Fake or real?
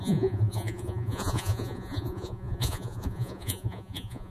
fake